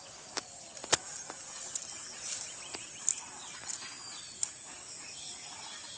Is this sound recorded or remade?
recorded